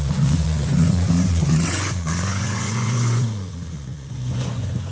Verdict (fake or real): fake